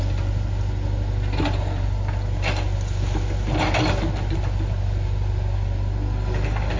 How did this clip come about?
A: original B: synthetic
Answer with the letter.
A